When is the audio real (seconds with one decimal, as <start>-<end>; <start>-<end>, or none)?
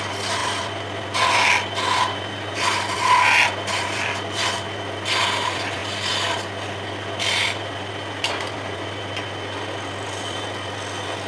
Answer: 0.0-11.3